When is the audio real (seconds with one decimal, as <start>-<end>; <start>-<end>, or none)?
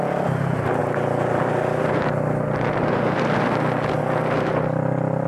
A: 0.0-5.3